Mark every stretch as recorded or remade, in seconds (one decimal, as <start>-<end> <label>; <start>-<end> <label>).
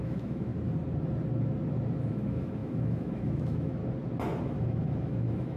0.0-0.5 remade; 0.5-2.0 recorded; 2.0-3.8 remade; 3.8-4.4 recorded; 4.4-5.6 remade